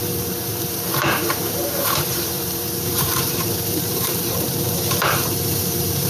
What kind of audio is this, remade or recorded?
remade